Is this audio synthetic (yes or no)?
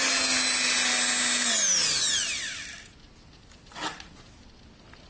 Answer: no